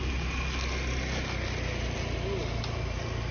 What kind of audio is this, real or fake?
real